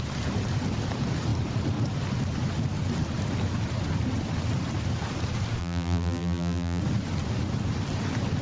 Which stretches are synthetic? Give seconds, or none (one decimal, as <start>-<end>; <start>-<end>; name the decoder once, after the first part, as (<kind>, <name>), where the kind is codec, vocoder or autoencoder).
5.6-6.8 (vocoder, BigVGAN v2)